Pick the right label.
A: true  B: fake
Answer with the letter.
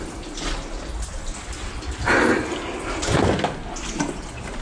A